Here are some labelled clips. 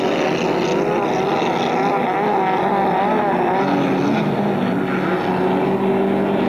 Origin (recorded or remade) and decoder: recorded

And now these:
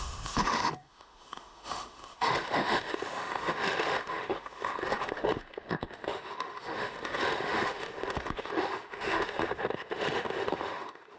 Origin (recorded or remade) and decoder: remade, autoencoder, DAC-VAE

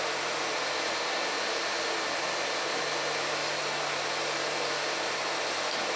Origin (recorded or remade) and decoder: recorded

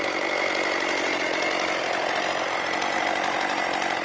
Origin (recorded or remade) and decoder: recorded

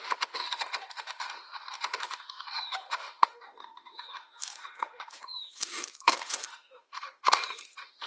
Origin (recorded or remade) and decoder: remade, autoencoder, DAC-VAE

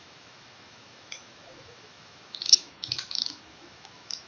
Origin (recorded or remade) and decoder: remade, autoencoder, DAC-VAE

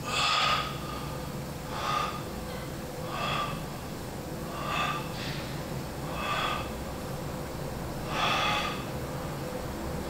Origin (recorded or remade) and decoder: recorded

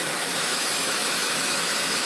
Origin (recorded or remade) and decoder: remade, autoencoder, DAC-VAE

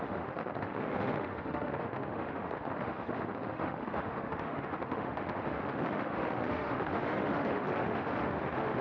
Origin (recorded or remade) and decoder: remade, autoencoder, DAC-VAE